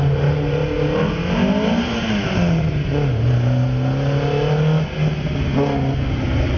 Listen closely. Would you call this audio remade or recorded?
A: recorded